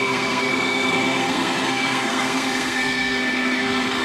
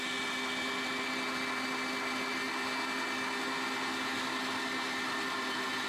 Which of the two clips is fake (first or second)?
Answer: first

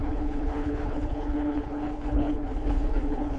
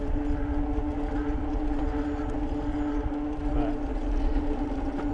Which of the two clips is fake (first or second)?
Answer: first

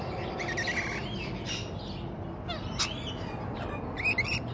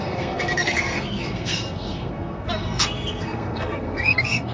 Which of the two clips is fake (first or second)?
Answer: second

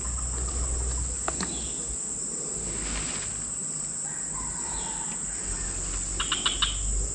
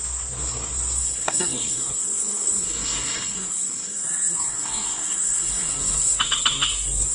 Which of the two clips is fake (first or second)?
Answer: second